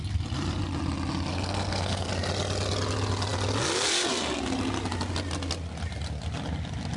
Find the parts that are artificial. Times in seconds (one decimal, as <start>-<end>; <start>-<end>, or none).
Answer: 1.3-2.1